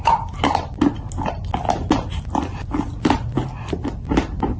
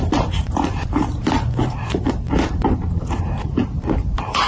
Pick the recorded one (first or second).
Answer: first